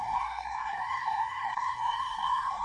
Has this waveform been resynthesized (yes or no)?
yes